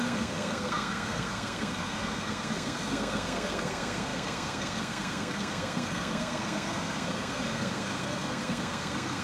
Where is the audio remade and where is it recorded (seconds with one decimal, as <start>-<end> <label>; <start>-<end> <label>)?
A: 0.0-9.2 remade